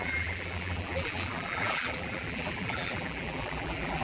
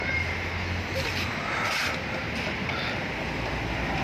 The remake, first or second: first